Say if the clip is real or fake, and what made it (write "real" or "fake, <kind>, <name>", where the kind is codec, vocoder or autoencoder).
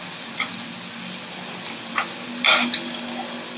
real